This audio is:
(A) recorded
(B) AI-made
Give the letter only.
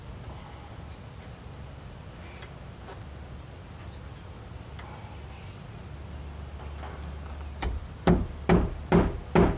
A